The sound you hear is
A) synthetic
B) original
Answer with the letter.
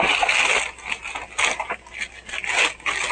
B